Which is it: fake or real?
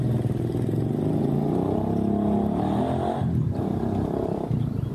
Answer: real